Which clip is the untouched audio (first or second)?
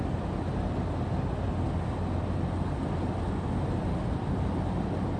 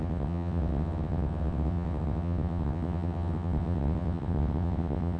first